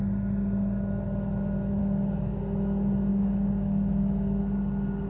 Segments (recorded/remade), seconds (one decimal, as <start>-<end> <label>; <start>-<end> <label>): 0.0-1.8 recorded; 1.8-2.4 remade; 2.4-3.1 recorded; 3.1-4.4 remade; 4.4-5.1 recorded